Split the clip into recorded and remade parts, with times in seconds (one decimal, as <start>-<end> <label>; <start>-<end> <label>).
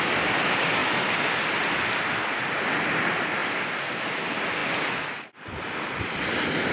0.0-6.7 recorded